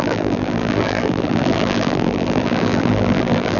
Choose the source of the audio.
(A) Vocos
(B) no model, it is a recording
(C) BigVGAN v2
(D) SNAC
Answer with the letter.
C